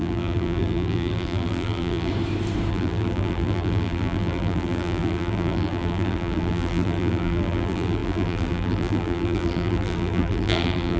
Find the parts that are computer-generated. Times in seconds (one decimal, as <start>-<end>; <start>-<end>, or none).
0.0-2.1; 2.7-11.0